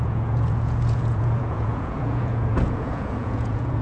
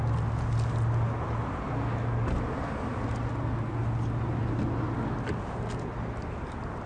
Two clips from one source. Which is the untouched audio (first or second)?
second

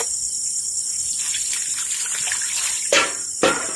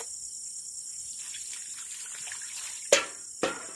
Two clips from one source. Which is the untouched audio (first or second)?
second